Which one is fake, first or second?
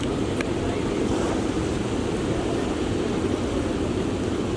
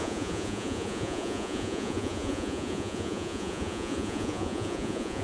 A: second